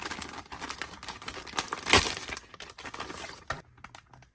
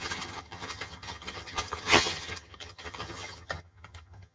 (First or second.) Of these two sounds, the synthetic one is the second